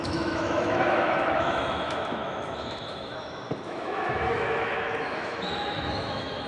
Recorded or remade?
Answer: remade